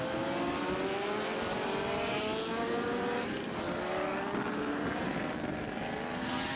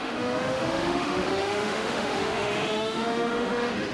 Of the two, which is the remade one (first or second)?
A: second